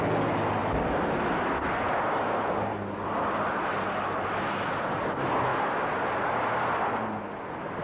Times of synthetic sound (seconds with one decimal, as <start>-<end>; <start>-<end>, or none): none